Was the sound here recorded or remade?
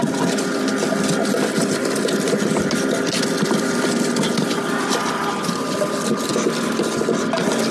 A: recorded